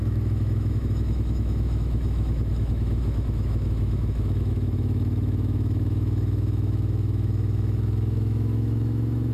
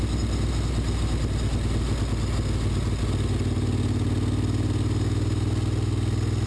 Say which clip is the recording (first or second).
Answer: second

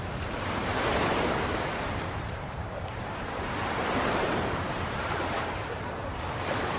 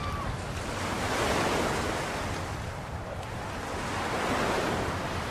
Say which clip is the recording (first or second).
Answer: second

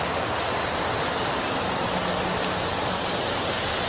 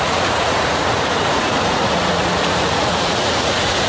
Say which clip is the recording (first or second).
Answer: first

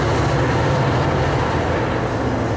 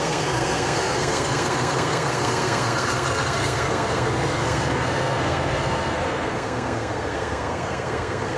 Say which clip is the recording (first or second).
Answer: first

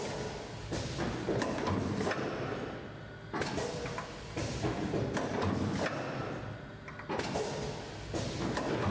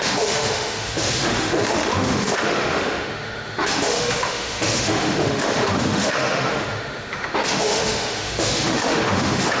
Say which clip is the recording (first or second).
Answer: first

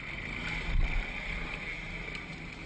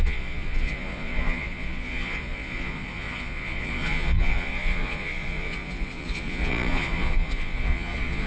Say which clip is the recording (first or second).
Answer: first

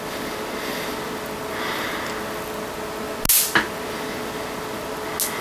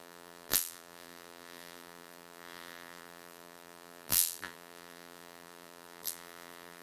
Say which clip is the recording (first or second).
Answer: first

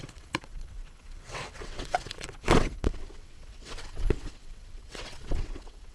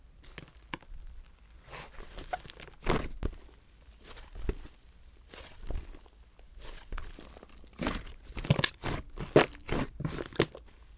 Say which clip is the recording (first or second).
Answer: second